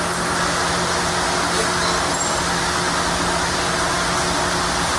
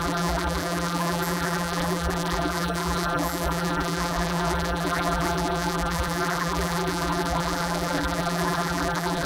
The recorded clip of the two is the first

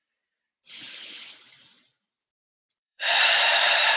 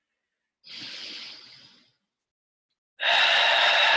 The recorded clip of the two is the second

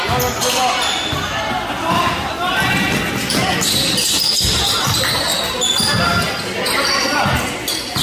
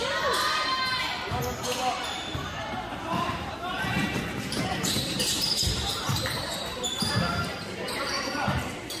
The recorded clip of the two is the first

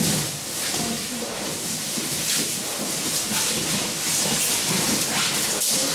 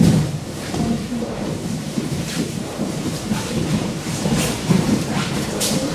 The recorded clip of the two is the first